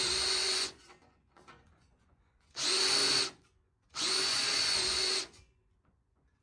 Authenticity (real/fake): fake